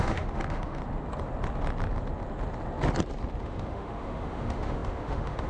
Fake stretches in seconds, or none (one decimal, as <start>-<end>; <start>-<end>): 0.0-0.8; 3.4-5.5